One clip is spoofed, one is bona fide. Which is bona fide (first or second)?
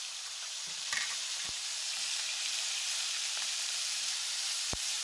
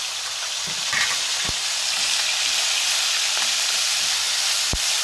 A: second